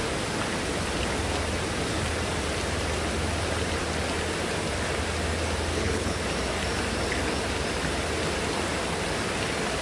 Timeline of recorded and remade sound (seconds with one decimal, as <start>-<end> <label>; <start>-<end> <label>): 0.0-5.7 recorded; 5.7-6.2 remade; 6.2-9.8 recorded